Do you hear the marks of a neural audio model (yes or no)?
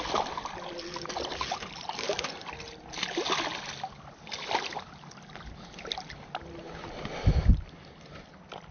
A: no